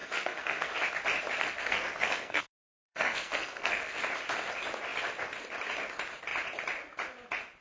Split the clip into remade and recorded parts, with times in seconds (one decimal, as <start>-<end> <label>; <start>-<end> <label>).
0.0-0.7 remade; 0.7-1.4 recorded; 1.4-4.0 remade; 4.0-7.6 recorded